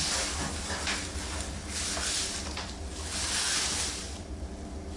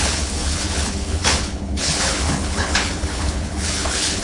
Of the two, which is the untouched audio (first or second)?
first